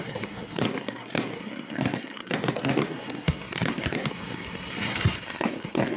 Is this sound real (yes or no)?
no